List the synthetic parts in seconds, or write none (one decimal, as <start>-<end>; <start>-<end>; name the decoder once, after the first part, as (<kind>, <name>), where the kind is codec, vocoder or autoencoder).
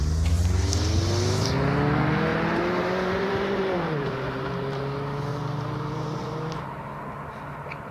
2.3-4.8 (vocoder, BigVGAN v2); 5.3-6.6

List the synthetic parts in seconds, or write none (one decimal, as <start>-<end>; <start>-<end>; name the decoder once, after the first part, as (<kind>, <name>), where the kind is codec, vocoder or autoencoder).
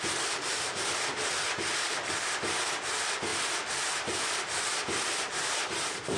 none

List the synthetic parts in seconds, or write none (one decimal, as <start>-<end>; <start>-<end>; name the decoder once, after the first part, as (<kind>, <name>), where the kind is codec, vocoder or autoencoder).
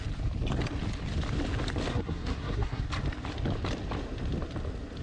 1.9-2.8 (codec, SNAC)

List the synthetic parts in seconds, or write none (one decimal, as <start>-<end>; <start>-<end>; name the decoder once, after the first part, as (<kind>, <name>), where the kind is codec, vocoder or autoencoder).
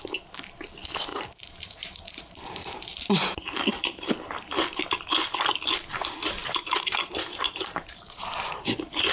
1.1-4.1 (vocoder, BigVGAN v2); 6.4-8.4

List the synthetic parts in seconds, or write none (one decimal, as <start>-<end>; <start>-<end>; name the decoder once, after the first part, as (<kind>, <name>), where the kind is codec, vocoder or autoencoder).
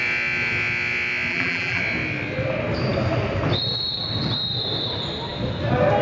1.3-1.8 (vocoder, BigVGAN v2)